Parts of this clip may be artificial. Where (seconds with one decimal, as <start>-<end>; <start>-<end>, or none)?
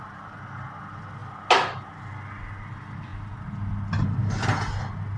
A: none